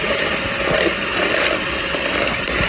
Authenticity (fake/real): real